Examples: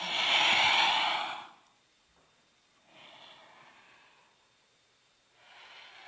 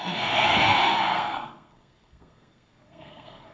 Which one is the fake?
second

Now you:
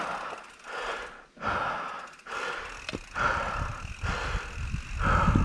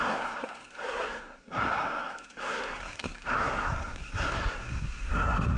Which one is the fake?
second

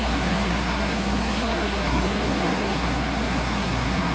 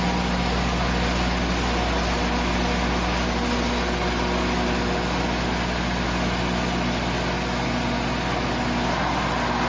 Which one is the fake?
first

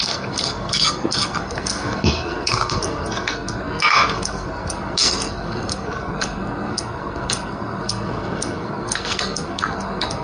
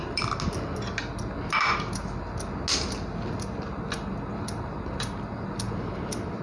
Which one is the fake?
first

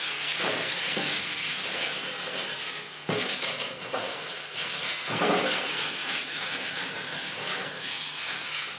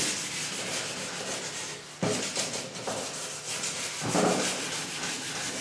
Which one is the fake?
first